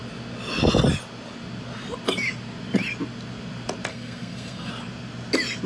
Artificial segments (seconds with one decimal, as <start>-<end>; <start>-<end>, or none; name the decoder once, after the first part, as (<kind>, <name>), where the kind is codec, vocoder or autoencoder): 3.9-4.7 (codec, SNAC)